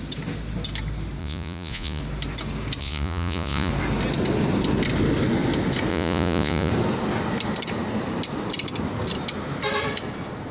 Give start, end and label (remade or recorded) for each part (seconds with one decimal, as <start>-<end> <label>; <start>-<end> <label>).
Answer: 0.0-1.2 recorded; 1.2-2.0 remade; 2.0-2.8 recorded; 2.8-3.7 remade; 3.7-5.9 recorded; 5.9-6.7 remade; 6.7-10.5 recorded